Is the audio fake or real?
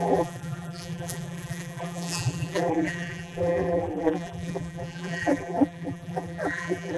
fake